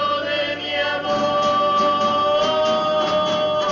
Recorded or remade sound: recorded